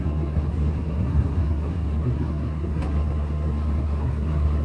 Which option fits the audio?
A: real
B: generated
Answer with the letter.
B